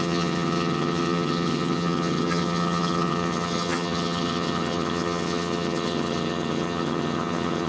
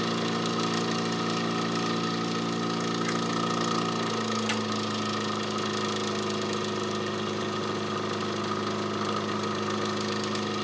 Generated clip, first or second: first